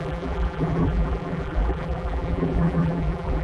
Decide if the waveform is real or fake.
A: fake